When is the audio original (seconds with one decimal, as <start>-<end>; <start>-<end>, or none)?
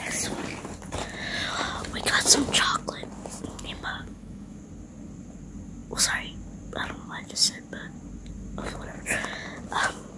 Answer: 0.0-4.0; 4.6-10.2